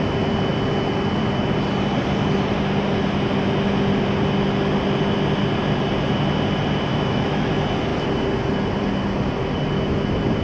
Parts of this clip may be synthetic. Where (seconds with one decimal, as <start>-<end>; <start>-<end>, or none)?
6.9-7.5